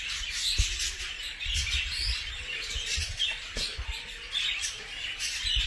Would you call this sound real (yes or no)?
no